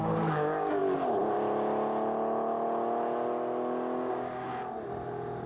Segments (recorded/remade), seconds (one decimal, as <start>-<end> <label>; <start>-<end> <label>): 0.0-0.8 remade; 0.8-4.1 recorded; 4.1-4.5 remade; 4.5-5.5 recorded